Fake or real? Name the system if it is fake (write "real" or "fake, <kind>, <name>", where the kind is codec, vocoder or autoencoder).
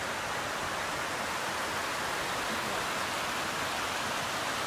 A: real